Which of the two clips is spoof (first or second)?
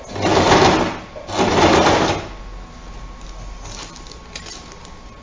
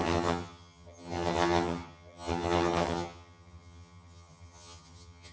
second